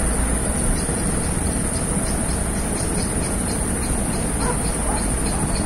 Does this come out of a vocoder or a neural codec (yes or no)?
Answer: no